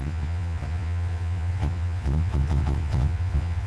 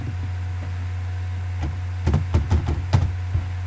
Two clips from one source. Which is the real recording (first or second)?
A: second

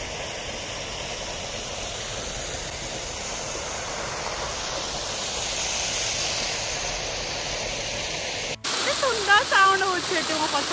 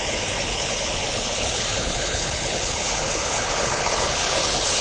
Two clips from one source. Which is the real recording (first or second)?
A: first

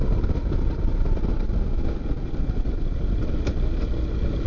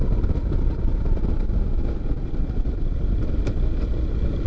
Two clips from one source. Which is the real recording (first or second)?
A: first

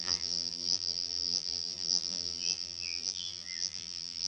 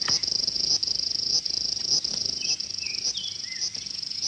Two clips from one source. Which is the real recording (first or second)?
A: second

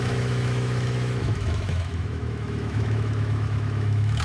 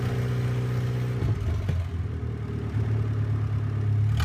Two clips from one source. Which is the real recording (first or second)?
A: second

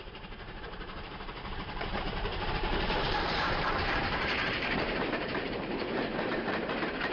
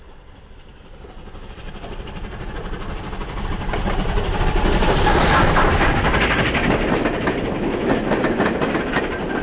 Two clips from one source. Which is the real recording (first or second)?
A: second